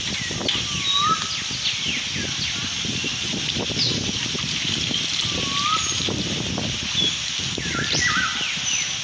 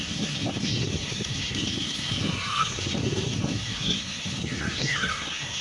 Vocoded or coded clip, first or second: second